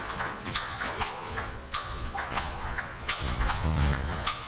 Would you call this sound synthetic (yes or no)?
yes